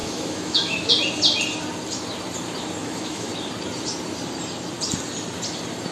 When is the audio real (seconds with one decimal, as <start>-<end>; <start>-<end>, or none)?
0.9-2.8; 3.3-5.9